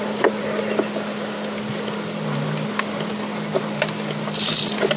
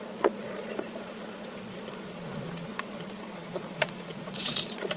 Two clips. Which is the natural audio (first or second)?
first